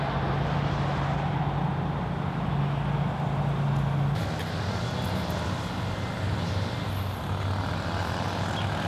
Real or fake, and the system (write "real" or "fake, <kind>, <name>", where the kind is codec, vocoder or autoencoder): real